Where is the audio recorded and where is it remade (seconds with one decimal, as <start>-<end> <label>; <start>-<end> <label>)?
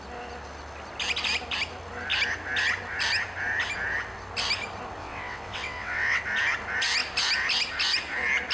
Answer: 0.0-5.0 recorded; 5.0-6.2 remade; 6.2-8.5 recorded